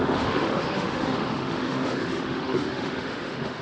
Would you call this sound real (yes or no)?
no